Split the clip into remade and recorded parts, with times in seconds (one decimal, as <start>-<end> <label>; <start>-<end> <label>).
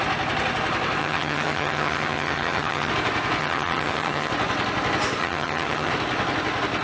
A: 0.0-1.0 recorded; 1.0-2.9 remade; 2.9-3.4 recorded; 3.4-4.3 remade; 4.3-5.2 recorded; 5.2-5.9 remade; 5.9-6.8 recorded